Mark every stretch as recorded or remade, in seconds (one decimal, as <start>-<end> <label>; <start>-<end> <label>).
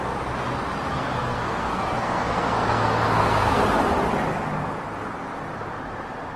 0.0-0.9 recorded; 0.9-3.6 remade; 3.6-6.4 recorded